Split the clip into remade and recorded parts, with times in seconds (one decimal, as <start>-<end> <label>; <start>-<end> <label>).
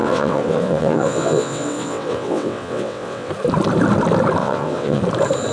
0.0-3.3 remade; 3.3-4.4 recorded; 4.4-5.0 remade; 5.0-5.5 recorded